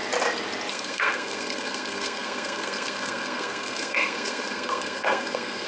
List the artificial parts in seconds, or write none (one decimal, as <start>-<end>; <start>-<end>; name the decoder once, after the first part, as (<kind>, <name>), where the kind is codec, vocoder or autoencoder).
0.7-5.7 (codec, SNAC)